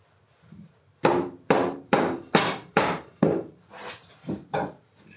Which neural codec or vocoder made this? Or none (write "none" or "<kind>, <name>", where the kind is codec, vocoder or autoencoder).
vocoder, BigVGAN v2